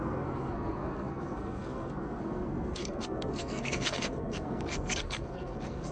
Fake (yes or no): yes